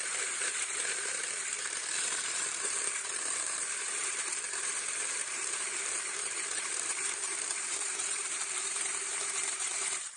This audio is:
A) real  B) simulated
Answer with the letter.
B